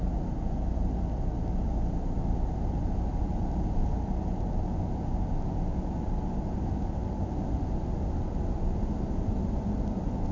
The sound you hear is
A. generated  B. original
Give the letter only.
B